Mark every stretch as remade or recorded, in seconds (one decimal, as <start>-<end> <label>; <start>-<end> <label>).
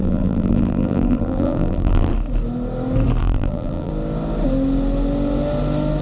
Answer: 0.0-2.1 remade; 2.1-3.2 recorded; 3.2-3.9 remade; 3.9-6.0 recorded